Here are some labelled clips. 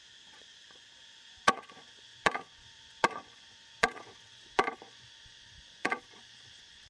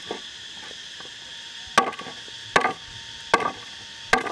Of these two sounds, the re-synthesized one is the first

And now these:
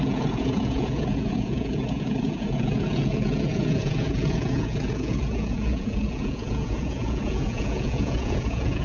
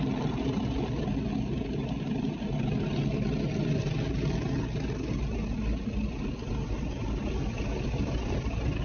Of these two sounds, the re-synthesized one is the first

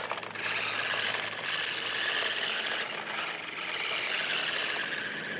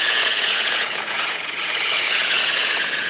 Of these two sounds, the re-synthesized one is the second